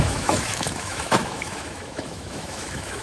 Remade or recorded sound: remade